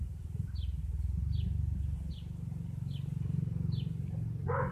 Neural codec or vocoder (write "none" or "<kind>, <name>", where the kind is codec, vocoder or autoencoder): none